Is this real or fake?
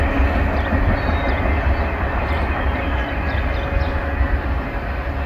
real